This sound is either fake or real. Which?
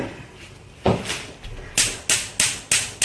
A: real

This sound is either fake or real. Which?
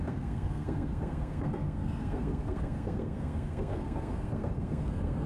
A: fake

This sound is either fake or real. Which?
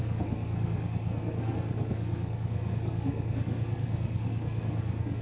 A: fake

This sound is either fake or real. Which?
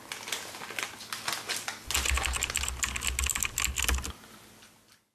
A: real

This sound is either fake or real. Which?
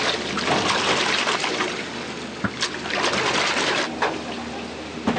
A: real